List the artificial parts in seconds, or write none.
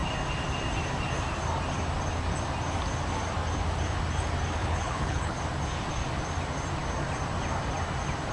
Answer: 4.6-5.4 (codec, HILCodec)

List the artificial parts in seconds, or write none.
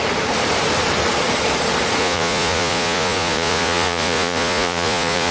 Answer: 2.0-5.3 (vocoder, Vocos)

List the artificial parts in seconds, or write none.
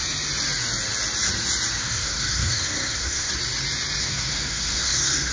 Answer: 1.8-3.3 (codec, SNAC); 4.0-5.3